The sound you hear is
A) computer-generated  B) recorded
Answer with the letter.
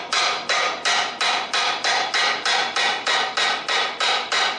B